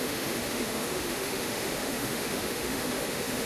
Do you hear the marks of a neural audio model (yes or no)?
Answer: yes